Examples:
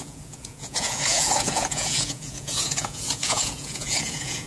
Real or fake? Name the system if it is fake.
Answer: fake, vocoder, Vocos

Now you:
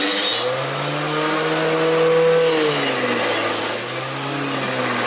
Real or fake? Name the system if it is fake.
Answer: real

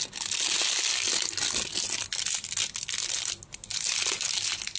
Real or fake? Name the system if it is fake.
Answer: real